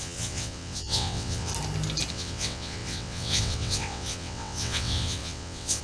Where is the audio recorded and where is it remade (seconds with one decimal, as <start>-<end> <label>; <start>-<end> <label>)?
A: 0.0-1.5 remade; 1.5-2.1 recorded; 2.1-5.8 remade